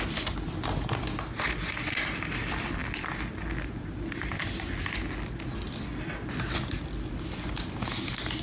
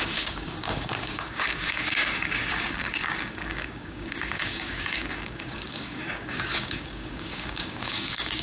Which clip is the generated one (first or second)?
second